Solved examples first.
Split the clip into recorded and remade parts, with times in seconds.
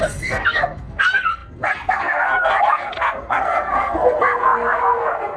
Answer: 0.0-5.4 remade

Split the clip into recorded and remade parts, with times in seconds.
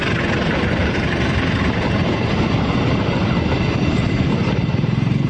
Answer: 0.0-0.8 recorded; 0.8-2.3 remade; 2.3-4.4 recorded; 4.4-5.3 remade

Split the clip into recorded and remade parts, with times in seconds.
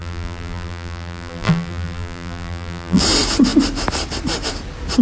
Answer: 0.0-3.0 remade; 3.0-5.0 recorded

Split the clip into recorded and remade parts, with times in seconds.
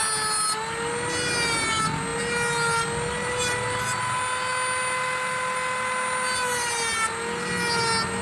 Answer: 0.0-8.2 recorded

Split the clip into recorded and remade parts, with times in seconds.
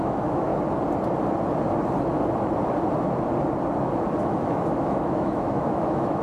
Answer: 0.0-0.5 remade; 0.5-4.2 recorded; 4.2-6.2 remade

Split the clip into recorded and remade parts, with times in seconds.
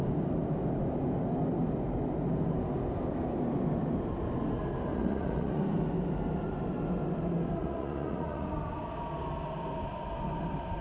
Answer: 0.0-4.9 recorded; 4.9-5.6 remade; 5.6-7.6 recorded; 7.6-8.5 remade; 8.5-10.8 recorded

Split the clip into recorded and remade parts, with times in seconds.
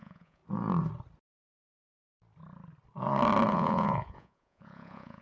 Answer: 0.0-0.4 remade; 0.4-3.5 recorded; 3.5-5.2 remade